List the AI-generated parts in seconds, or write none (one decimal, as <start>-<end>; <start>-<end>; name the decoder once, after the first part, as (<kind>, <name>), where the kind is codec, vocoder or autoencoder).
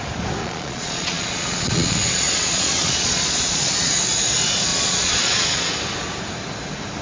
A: 0.4-3.9 (vocoder, Vocos); 4.7-5.7